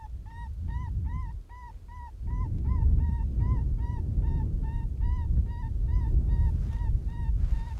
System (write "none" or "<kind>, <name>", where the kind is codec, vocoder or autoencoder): none